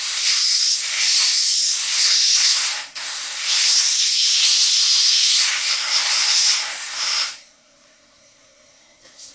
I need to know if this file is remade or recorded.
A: remade